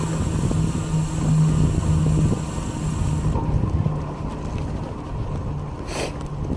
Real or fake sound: real